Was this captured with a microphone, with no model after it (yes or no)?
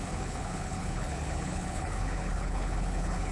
no